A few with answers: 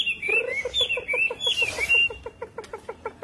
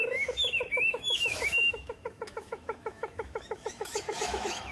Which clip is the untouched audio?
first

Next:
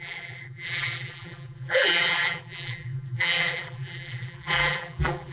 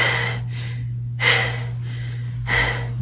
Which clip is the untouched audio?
second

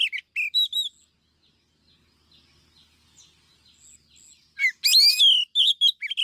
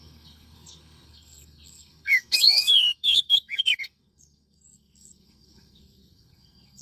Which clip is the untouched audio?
first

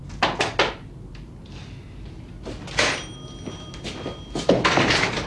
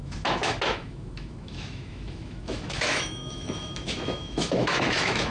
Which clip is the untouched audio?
first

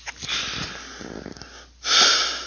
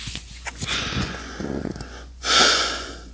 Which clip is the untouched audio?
first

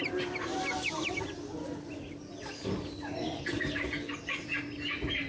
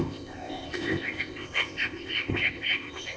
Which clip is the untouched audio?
first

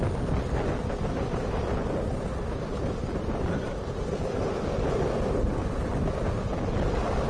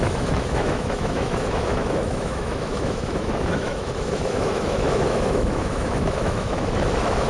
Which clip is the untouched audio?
first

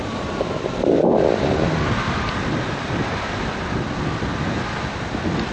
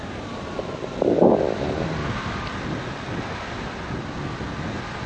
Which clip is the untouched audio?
second